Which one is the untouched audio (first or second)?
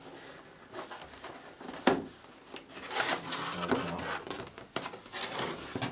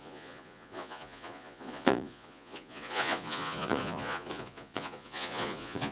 first